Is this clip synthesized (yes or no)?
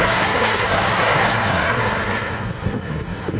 yes